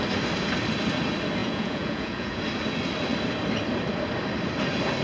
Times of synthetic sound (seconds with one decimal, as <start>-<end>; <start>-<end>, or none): 1.4-2.4